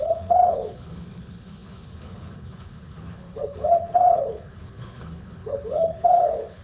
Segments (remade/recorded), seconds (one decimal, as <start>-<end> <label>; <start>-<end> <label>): 0.0-6.6 remade